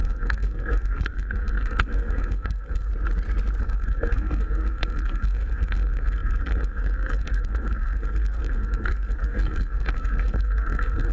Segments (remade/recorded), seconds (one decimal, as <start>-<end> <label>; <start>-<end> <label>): 0.0-2.9 remade; 2.9-3.6 recorded; 3.6-11.1 remade